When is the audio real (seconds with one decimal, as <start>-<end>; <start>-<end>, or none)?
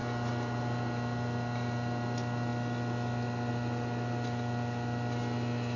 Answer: 0.0-5.8